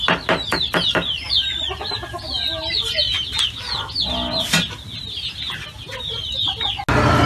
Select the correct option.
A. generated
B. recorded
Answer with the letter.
B